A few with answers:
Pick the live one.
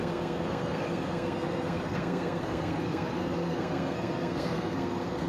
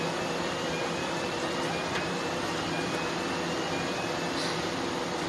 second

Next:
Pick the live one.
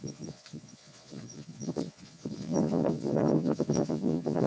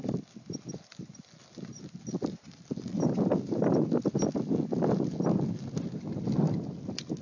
second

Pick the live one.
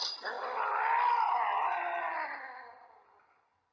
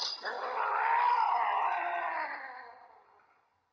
first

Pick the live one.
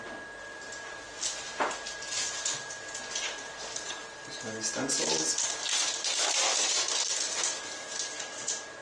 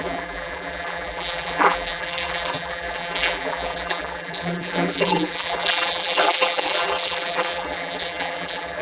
first